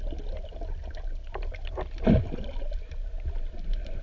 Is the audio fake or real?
real